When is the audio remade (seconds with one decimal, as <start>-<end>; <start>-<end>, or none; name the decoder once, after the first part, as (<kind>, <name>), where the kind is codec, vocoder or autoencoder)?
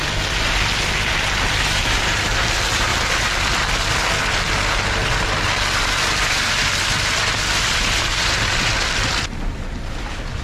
none